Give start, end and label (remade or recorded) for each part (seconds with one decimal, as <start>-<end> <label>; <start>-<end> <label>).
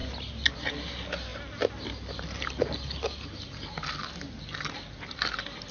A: 0.0-5.7 recorded